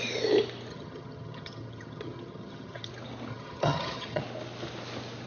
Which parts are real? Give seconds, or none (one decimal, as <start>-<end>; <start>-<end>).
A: 0.0-0.7; 2.9-3.3; 4.2-5.3